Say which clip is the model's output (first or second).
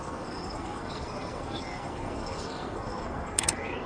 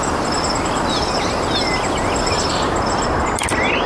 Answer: first